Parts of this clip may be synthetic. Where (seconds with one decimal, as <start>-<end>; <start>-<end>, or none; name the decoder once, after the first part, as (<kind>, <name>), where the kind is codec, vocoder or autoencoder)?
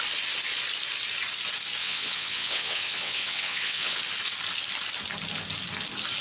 1.8-4.0 (vocoder, WaveNeXt)